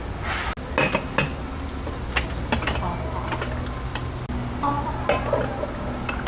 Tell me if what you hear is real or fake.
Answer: real